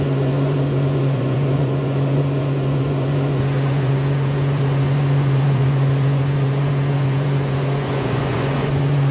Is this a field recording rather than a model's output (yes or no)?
no